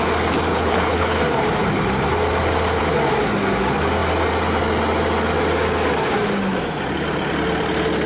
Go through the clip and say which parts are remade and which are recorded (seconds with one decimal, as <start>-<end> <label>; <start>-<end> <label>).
0.0-0.5 recorded; 0.5-1.2 remade; 1.2-8.1 recorded